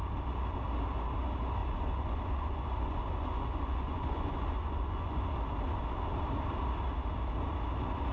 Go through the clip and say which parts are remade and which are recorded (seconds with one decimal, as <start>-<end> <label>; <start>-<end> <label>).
0.0-1.6 recorded; 1.6-5.2 remade; 5.2-8.1 recorded